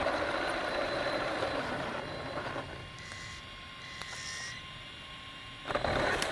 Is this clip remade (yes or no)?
yes